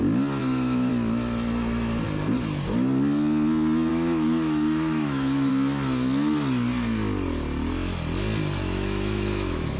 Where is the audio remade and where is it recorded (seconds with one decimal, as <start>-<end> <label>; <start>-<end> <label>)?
0.0-0.4 recorded; 0.4-0.9 remade; 0.9-3.9 recorded; 3.9-5.5 remade; 5.5-8.6 recorded; 8.6-9.8 remade

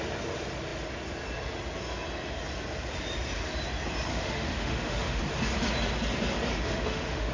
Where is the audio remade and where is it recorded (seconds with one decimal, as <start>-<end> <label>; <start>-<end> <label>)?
0.0-4.1 recorded; 4.1-5.2 remade; 5.2-6.5 recorded; 6.5-7.3 remade

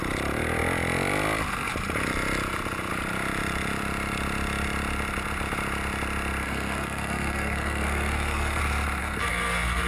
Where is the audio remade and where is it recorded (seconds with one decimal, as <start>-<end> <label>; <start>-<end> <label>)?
0.0-6.4 recorded; 6.4-8.6 remade; 8.6-9.0 recorded; 9.0-9.9 remade

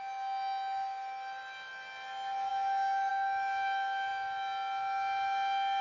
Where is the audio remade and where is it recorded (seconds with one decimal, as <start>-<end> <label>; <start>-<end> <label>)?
0.0-5.8 recorded

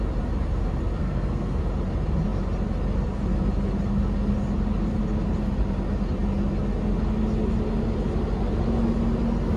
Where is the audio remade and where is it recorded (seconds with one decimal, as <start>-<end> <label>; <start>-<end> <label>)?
0.0-1.0 recorded; 1.0-1.6 remade; 1.6-9.6 recorded

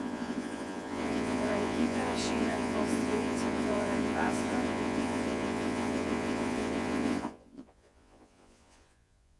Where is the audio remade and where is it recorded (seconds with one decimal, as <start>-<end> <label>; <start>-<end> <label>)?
0.0-9.4 remade

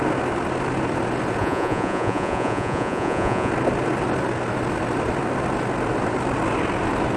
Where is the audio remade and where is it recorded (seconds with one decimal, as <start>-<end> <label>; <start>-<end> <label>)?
0.0-1.4 recorded; 1.4-3.5 remade; 3.5-7.2 recorded

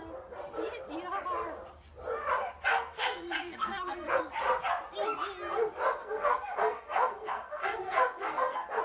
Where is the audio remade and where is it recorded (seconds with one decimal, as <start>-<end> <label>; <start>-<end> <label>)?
0.0-2.7 recorded; 2.7-4.2 remade; 4.2-6.0 recorded; 6.0-8.8 remade